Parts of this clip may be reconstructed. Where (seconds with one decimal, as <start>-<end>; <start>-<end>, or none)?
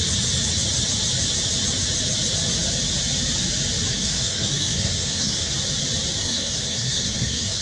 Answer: 3.9-5.5; 6.2-7.6